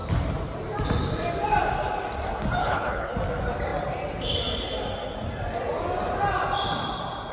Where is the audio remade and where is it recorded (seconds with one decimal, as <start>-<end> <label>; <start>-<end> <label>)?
0.0-2.6 recorded; 2.6-3.1 remade; 3.1-7.3 recorded